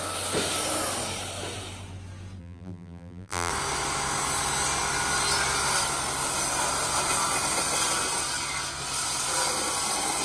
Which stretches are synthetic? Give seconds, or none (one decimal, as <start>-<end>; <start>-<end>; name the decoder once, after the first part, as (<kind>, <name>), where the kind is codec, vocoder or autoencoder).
2.4-3.5 (vocoder, BigVGAN v2)

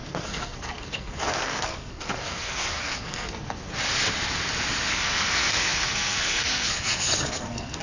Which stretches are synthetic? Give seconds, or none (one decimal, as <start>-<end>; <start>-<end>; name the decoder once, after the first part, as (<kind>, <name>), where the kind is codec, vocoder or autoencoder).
0.0-3.7 (codec, SNAC); 4.9-7.8

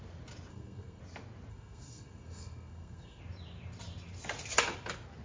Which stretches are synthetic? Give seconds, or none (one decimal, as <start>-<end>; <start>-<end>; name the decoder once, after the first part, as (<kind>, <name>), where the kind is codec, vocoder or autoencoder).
0.5-1.0 (codec, SNAC); 1.5-3.2

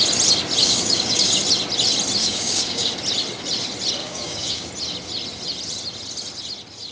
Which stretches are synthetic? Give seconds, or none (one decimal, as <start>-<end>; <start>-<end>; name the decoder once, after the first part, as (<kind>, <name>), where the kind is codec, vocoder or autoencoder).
0.6-1.4 (codec, DAC); 2.2-2.9; 4.0-4.7

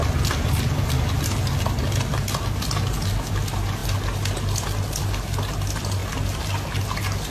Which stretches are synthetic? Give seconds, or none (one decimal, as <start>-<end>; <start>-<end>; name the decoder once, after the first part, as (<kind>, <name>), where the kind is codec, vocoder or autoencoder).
none

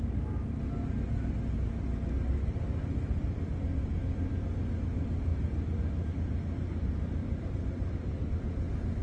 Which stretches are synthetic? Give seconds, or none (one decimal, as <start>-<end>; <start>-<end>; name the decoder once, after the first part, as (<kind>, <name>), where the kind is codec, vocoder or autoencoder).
7.2-8.3 (vocoder, BigVGAN v2)